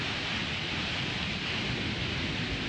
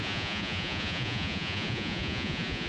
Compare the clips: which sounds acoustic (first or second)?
first